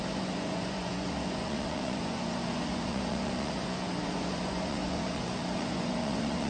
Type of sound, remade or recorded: remade